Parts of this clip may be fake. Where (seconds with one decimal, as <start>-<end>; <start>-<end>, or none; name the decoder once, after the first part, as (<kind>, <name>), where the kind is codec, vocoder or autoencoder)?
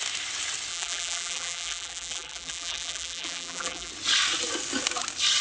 0.7-3.9 (vocoder, BigVGAN v2)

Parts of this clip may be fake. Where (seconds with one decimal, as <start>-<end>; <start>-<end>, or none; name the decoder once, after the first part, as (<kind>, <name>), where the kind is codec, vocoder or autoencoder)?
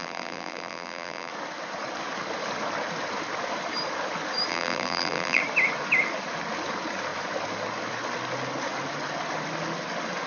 0.0-1.3 (vocoder, BigVGAN v2); 4.5-5.4